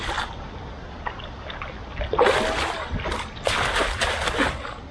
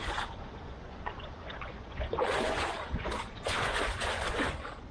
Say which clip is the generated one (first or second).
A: second